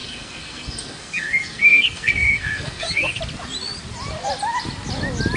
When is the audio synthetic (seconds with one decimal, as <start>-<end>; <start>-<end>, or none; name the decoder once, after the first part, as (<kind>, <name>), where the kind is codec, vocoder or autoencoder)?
0.0-3.2 (codec, SNAC)